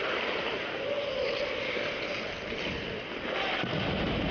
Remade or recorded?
recorded